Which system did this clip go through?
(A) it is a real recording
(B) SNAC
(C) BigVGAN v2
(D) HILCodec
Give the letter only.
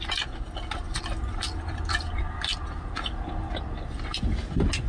A